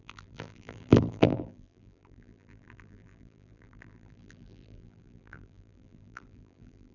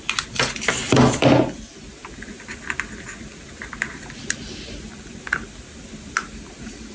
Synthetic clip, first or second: first